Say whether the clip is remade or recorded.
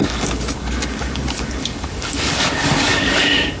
remade